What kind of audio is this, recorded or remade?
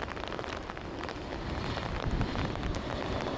recorded